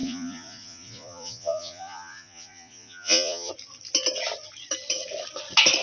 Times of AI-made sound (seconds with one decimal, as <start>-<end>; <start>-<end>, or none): 0.0-3.5